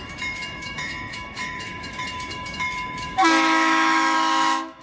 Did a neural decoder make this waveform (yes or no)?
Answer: yes